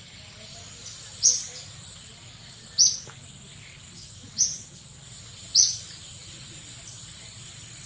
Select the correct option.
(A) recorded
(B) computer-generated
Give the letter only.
A